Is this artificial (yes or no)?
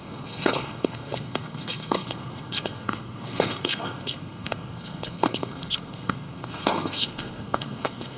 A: yes